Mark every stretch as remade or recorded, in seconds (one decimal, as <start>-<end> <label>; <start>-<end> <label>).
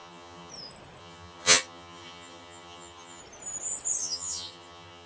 0.0-0.5 remade; 0.5-1.0 recorded; 1.0-3.2 remade; 3.2-4.0 recorded; 4.0-5.1 remade